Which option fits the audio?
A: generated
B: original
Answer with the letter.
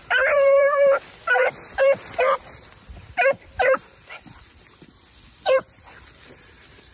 A